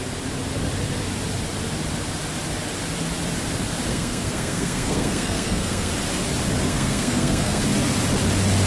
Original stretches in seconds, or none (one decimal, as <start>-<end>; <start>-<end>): 0.0-3.9; 5.9-6.7; 7.6-8.7